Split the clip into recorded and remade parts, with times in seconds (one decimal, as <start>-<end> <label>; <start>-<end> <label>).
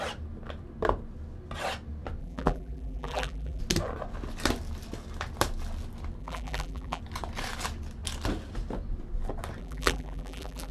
0.0-2.2 recorded; 2.2-3.6 remade; 3.6-6.2 recorded; 6.2-7.0 remade; 7.0-9.6 recorded; 9.6-10.7 remade